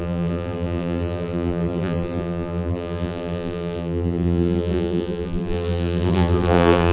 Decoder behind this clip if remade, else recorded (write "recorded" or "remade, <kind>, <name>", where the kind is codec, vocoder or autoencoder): remade, vocoder, BigVGAN v2